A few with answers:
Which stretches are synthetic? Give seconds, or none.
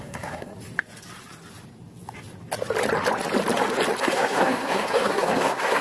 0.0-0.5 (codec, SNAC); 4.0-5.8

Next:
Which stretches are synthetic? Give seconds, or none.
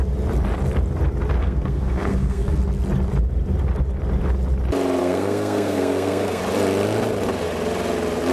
1.4-2.6 (codec, SNAC); 5.0-6.4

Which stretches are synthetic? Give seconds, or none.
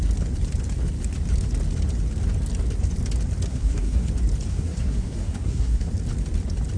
3.5-4.1 (codec, SNAC); 4.5-5.9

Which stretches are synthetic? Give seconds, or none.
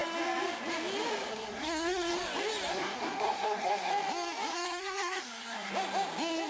1.3-2.1 (codec, SNAC); 2.7-3.9; 4.5-5.7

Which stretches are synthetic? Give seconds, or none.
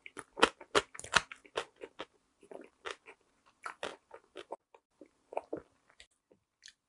none